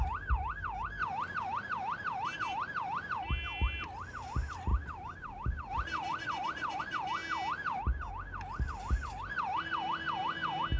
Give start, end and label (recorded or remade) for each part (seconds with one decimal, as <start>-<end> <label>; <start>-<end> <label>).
0.0-4.7 recorded; 4.7-6.8 remade; 6.8-10.8 recorded